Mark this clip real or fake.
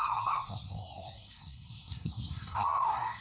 fake